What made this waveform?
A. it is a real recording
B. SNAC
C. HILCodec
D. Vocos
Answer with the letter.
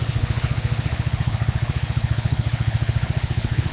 C